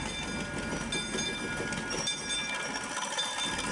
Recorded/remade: recorded